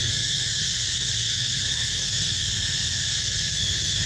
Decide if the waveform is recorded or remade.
remade